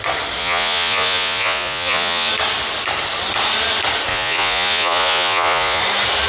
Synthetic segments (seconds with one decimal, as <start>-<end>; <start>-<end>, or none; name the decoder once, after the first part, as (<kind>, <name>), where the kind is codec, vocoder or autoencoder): 0.4-2.3 (vocoder, Vocos); 4.1-5.8